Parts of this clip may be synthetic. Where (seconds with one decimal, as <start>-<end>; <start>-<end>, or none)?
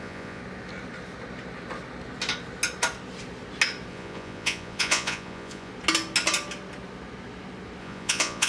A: 0.0-0.4; 3.9-5.7; 7.8-8.5